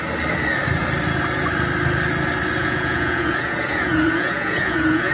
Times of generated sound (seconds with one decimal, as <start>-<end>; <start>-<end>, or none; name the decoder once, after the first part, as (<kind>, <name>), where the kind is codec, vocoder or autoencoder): 2.6-5.1 (vocoder, Vocos)